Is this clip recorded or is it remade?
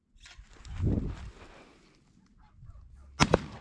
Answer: recorded